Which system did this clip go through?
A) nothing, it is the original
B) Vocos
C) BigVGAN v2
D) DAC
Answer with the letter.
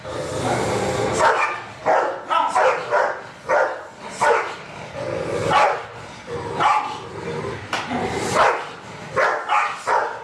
A